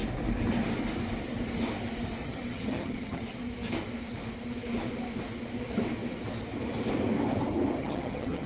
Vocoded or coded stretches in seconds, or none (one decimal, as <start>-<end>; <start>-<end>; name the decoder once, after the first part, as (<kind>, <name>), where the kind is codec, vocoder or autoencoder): 2.2-3.2 (vocoder, HiFi-GAN); 7.8-8.5